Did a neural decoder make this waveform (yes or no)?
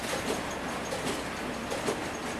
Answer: no